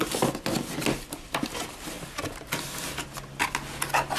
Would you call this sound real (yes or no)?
yes